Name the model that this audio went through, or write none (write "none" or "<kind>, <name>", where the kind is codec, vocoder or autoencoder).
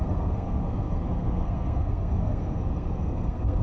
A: codec, SNAC